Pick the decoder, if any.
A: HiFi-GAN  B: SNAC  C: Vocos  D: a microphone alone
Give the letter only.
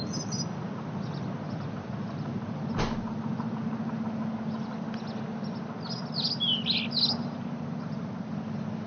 D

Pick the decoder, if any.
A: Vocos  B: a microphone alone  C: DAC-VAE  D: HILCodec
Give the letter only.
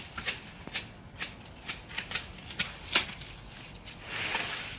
B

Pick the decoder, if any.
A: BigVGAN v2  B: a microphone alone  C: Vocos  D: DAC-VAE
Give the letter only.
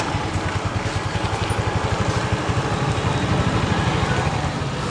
B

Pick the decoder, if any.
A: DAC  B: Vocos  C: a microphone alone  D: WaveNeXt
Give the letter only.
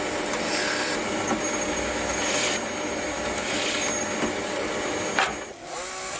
C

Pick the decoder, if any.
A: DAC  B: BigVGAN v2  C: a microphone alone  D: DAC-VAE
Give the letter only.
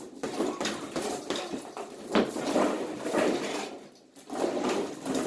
C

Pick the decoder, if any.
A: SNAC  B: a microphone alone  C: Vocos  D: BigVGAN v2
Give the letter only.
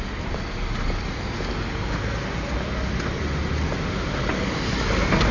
B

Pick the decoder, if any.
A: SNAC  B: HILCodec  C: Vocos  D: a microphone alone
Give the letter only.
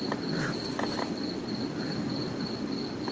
D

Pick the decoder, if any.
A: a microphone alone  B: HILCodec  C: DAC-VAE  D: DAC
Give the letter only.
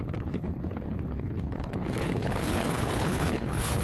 B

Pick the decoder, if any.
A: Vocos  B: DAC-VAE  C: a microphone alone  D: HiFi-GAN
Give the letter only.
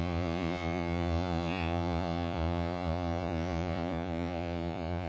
A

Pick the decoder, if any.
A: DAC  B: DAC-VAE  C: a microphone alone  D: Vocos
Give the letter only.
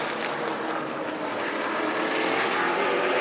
C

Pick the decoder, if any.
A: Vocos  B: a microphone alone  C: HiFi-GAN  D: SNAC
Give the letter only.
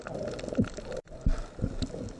B